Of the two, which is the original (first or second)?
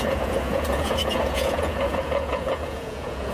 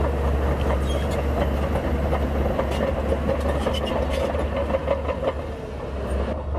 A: second